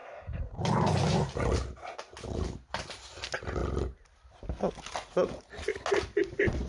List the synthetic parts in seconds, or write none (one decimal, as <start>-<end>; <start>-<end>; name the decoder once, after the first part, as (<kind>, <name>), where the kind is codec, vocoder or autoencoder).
0.0-0.6 (codec, SNAC)